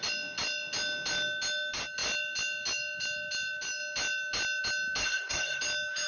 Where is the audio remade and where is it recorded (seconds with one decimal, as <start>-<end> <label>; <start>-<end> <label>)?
0.0-5.0 recorded; 5.0-5.6 remade; 5.6-6.1 recorded